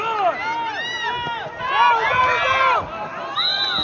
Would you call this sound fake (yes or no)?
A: no